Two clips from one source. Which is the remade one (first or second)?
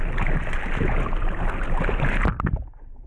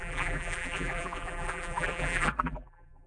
second